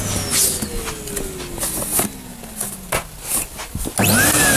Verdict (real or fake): real